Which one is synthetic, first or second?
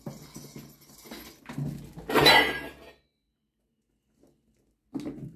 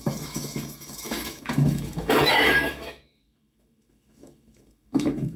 second